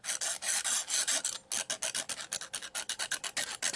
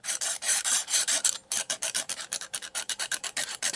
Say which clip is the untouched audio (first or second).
first